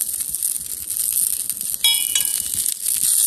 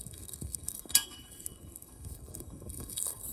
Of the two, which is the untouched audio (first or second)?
first